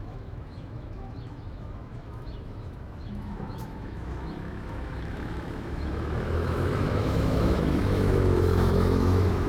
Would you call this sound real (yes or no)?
no